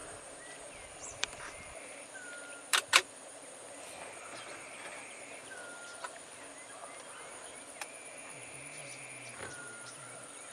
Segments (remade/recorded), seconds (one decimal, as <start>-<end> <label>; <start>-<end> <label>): 0.0-6.8 remade; 6.8-9.5 recorded; 9.5-10.5 remade